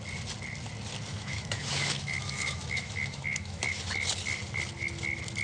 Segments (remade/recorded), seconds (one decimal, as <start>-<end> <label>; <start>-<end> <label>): 0.0-1.1 recorded; 1.1-3.8 remade; 3.8-5.4 recorded